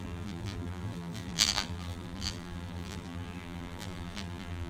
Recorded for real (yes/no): no